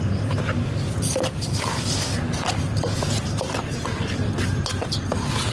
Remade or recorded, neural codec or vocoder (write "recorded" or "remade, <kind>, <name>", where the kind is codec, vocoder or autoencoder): recorded